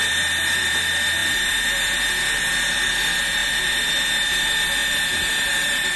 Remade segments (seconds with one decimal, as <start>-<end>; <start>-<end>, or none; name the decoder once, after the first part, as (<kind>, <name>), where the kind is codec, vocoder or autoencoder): 0.0-6.0 (vocoder, BigVGAN v2)